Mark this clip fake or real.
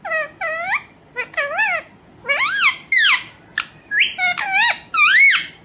real